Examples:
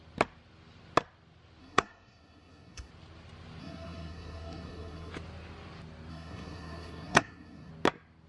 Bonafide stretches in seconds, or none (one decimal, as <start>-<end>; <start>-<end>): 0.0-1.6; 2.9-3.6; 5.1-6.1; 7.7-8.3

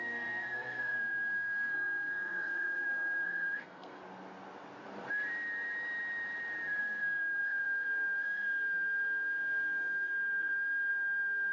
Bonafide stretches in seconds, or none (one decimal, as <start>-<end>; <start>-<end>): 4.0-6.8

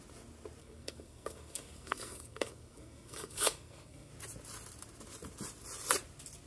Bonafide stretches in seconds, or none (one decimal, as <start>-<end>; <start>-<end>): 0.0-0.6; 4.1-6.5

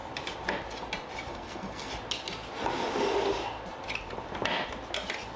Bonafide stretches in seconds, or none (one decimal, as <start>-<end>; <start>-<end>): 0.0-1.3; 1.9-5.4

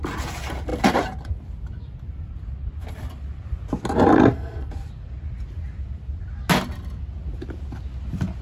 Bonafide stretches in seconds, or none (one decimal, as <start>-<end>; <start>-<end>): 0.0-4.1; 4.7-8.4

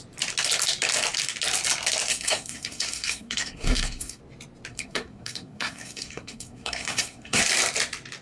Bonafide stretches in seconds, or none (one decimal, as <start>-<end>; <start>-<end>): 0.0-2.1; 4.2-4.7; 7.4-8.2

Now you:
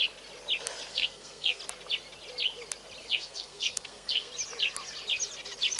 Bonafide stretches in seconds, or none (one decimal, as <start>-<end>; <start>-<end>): 0.0-0.9; 1.6-3.0; 4.3-5.8

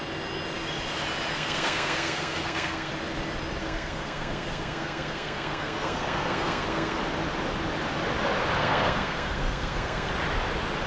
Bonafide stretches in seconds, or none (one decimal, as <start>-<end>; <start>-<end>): 0.0-1.3; 2.9-3.6; 7.0-8.6; 10.1-10.9